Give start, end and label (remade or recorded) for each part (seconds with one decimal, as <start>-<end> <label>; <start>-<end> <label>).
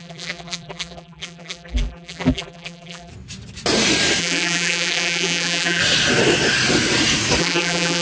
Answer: 0.0-3.1 remade; 3.1-4.2 recorded; 4.2-5.8 remade; 5.8-7.4 recorded; 7.4-8.0 remade